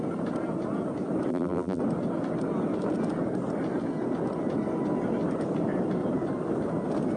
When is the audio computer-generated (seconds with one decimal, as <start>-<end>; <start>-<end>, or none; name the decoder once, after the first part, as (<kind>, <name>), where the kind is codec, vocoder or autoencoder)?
1.3-1.8 (vocoder, BigVGAN v2)